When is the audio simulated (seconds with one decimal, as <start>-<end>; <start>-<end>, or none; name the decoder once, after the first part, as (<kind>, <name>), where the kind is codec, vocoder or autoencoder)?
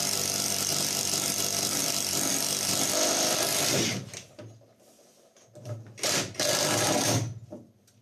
none